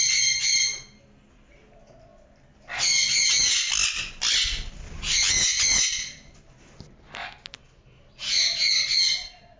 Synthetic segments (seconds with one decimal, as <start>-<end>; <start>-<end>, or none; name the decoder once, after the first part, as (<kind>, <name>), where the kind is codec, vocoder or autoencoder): none